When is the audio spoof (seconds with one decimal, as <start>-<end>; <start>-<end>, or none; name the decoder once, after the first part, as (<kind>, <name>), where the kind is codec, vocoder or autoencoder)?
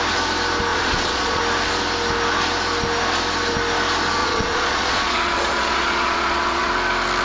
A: 0.7-1.4 (vocoder, Vocos); 4.2-6.7